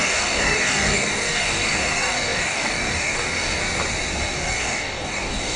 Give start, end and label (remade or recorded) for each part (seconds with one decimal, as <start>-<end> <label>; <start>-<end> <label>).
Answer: 0.0-3.6 remade; 3.6-4.2 recorded; 4.2-5.6 remade